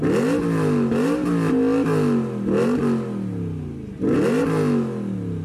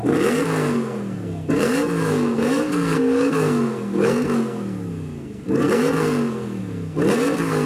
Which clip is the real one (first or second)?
first